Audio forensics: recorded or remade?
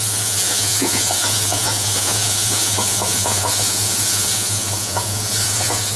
remade